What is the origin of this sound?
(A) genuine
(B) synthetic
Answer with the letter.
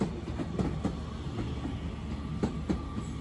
A